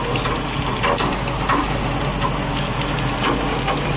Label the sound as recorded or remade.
recorded